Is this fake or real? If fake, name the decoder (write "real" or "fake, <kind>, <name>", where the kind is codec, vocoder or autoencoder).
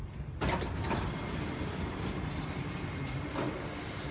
real